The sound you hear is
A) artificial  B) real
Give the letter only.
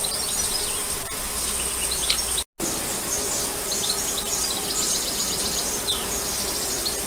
B